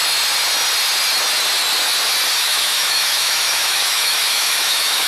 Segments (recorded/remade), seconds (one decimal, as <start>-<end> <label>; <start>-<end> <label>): 0.0-2.4 recorded; 2.4-5.1 remade